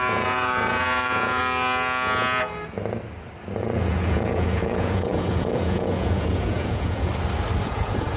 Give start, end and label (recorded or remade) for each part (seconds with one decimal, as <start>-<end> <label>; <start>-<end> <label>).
0.0-1.4 remade; 1.4-3.6 recorded; 3.6-7.1 remade; 7.1-7.6 recorded; 7.6-8.2 remade